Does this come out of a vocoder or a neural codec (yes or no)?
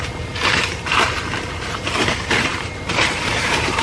yes